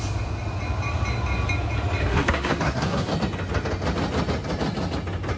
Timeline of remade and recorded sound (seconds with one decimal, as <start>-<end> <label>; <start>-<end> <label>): 0.0-2.0 recorded; 2.0-3.1 remade; 3.1-5.4 recorded